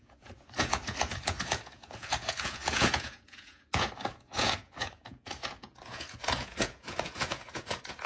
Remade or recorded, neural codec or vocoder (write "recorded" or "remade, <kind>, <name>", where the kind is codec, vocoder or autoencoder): remade, vocoder, Vocos